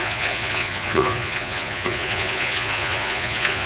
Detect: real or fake fake